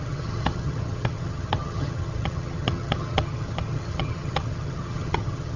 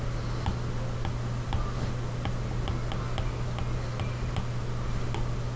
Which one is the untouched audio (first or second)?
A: second